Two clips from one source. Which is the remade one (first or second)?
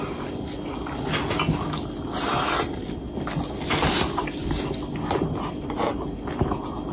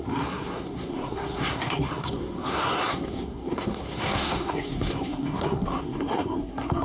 second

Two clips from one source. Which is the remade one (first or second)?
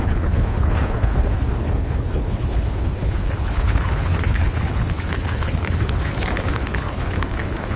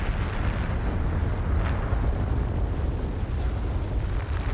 first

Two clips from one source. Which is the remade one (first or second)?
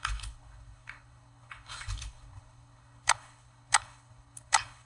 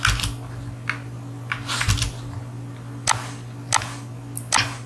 first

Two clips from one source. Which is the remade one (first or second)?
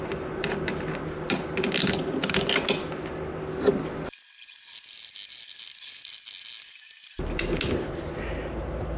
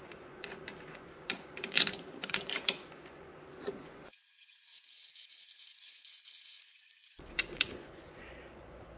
second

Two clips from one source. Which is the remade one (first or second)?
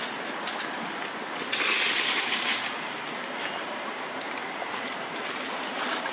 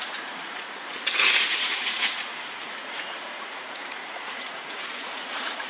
second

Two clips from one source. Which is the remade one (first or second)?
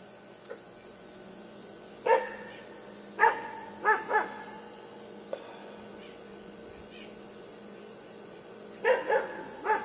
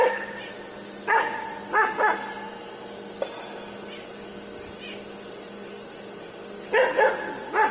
first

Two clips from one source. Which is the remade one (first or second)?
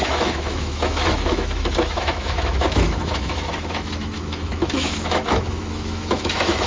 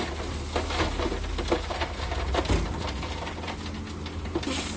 first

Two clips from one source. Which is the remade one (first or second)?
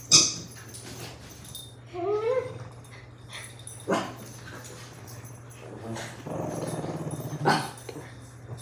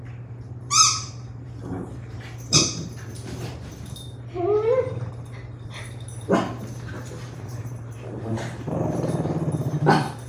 second